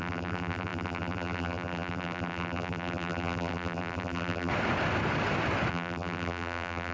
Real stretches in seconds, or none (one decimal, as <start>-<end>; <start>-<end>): 4.5-5.7